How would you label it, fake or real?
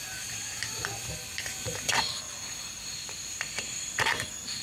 real